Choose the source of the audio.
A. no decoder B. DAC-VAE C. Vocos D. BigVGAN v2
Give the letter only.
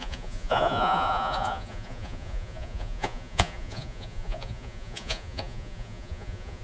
C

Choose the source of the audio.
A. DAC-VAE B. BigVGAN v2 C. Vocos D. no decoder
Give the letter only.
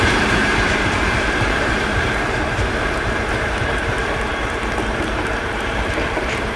B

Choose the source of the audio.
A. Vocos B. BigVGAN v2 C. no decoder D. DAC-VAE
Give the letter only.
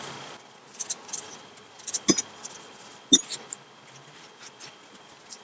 C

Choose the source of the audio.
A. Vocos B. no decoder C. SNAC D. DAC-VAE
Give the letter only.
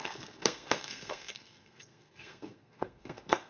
C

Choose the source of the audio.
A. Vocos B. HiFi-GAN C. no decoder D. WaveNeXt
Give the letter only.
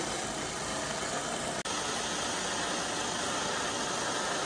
C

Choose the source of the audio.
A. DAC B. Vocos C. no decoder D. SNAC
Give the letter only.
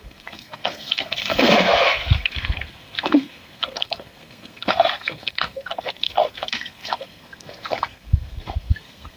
D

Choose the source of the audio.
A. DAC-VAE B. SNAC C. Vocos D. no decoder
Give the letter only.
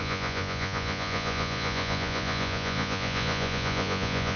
C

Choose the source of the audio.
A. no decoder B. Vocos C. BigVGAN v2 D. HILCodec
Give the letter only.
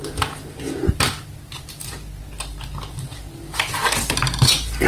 A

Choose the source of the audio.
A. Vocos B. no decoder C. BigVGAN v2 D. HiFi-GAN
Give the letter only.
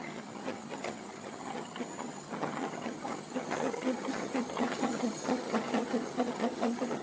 D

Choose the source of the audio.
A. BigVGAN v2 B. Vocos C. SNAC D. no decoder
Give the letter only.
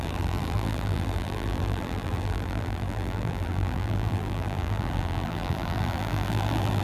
A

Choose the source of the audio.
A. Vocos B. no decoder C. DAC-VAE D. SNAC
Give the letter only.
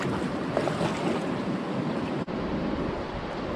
B